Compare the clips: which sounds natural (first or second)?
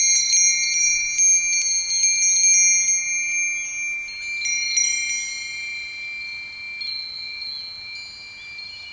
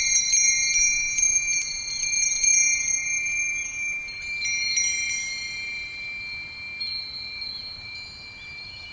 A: first